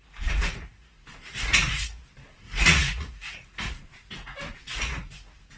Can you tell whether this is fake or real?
fake